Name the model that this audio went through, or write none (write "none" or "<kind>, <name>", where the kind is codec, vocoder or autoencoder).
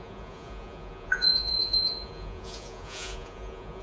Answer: vocoder, Vocos